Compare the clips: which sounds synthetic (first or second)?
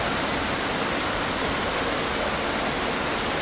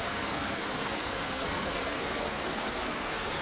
second